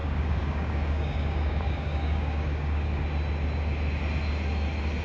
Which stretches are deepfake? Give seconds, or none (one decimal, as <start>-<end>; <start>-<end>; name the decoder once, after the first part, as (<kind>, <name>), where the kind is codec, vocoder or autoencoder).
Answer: 0.0-3.0 (codec, DAC)